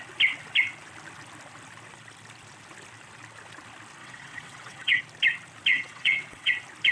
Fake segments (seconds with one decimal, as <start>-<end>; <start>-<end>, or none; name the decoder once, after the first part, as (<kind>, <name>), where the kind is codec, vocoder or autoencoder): 4.0-5.0 (vocoder, WaveNeXt); 5.7-6.5